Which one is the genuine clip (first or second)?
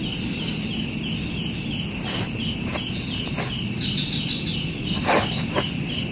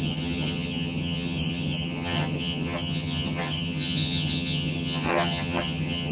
first